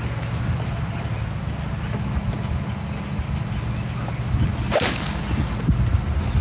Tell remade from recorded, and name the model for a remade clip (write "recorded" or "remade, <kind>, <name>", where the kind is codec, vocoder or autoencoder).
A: recorded